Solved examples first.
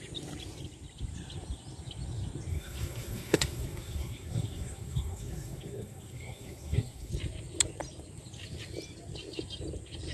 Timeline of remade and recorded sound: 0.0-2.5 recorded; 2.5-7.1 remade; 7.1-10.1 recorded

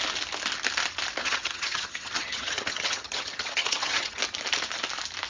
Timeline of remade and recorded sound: 0.0-1.2 recorded; 1.2-4.2 remade; 4.2-5.3 recorded